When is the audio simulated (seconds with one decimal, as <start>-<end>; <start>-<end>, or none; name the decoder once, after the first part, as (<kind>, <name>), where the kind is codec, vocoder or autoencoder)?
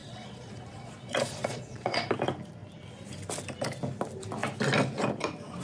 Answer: 0.0-2.1 (vocoder, Vocos)